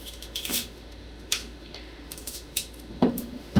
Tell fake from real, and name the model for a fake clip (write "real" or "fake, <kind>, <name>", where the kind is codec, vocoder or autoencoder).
fake, autoencoder, DAC-VAE